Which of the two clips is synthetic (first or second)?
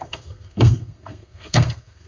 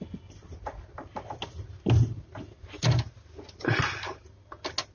first